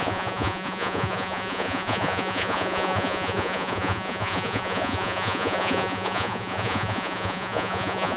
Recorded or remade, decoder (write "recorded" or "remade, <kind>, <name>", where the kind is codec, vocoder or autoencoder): remade, vocoder, Vocos